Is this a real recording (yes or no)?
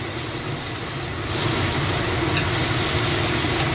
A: yes